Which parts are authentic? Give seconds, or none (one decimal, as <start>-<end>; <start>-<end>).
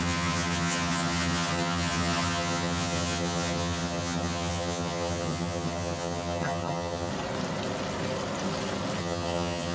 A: 7.1-9.0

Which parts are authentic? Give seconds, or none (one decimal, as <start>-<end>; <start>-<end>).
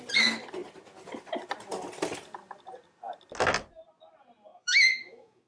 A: 0.0-4.5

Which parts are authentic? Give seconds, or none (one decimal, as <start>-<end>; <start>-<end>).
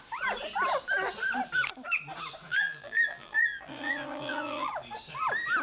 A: 0.0-2.5; 4.7-5.6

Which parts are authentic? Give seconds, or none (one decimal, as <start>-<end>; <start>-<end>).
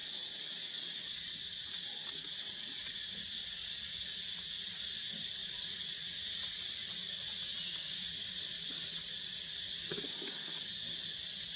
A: 3.7-5.4; 10.4-11.6